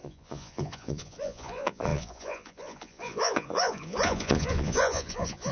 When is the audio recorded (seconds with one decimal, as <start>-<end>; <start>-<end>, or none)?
none